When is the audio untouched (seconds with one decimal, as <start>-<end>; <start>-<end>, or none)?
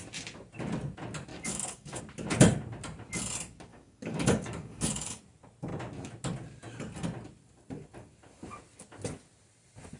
0.0-1.3; 2.0-3.7; 5.2-10.0